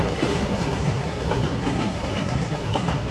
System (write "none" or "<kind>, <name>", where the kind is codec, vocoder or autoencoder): codec, SNAC